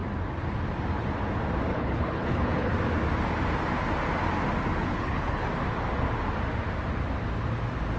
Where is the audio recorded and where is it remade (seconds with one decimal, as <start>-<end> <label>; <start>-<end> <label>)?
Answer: 0.0-1.7 recorded; 1.7-2.7 remade; 2.7-4.8 recorded; 4.8-5.5 remade; 5.5-8.0 recorded